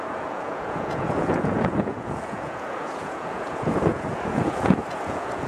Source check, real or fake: fake